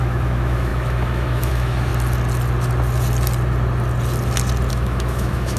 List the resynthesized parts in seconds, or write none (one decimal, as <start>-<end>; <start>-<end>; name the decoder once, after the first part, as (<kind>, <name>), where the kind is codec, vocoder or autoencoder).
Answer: 0.0-1.9 (autoencoder, DAC-VAE); 4.7-5.6